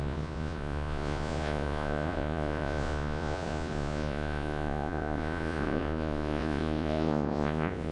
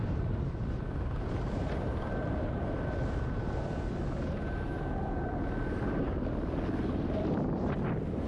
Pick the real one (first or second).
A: second